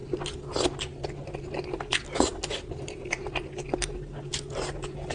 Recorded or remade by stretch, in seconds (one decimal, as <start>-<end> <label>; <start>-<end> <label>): 0.0-5.1 recorded